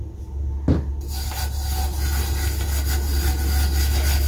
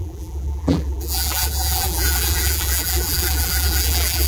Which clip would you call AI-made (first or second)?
second